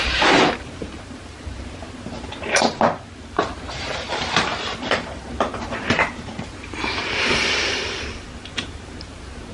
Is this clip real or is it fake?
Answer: fake